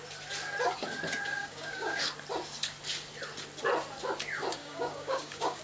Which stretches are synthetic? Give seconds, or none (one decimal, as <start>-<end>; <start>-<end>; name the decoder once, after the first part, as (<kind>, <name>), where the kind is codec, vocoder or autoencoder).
1.4-2.0 (codec, DAC); 4.6-5.6